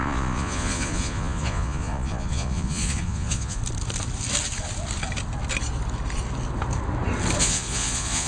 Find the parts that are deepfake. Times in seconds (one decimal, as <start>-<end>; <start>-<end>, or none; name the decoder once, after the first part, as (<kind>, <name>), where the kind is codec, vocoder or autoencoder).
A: 0.0-3.6 (vocoder, Vocos); 7.4-8.3